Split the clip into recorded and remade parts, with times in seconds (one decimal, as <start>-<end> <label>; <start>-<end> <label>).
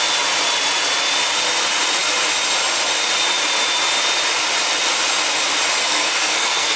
0.0-5.8 recorded; 5.8-6.8 remade